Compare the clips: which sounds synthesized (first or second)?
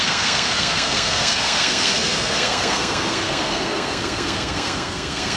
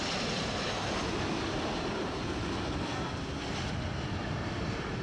first